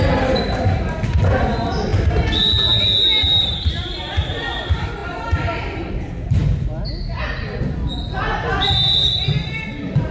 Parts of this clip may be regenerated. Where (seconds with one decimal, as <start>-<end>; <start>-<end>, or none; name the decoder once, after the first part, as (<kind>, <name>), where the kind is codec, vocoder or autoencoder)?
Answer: 0.0-1.9 (vocoder, BigVGAN v2); 3.4-6.4; 7.3-10.1